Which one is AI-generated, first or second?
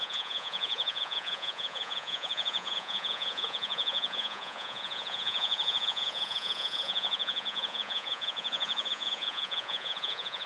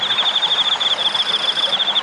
first